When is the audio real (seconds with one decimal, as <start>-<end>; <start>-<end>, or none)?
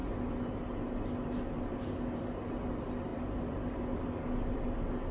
0.0-3.1; 4.6-5.1